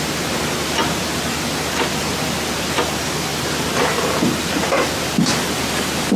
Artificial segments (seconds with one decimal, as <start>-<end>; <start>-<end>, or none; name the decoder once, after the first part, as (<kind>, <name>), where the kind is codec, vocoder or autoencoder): none